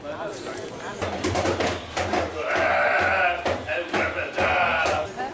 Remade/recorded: remade